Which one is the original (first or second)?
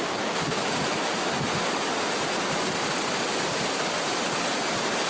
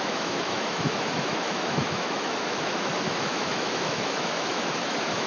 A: first